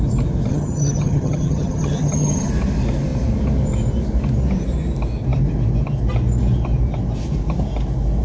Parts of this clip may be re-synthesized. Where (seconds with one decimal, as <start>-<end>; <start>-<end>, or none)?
0.5-2.5